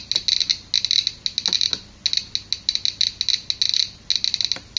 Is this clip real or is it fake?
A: real